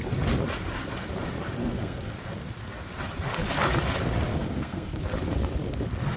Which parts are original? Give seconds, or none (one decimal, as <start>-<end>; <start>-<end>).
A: 0.0-1.6; 2.1-4.3; 5.0-6.2